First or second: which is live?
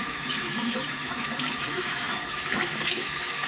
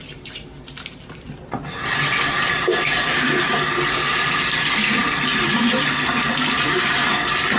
second